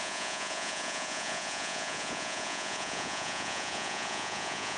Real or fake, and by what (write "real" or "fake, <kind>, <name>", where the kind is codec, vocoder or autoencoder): fake, vocoder, Vocos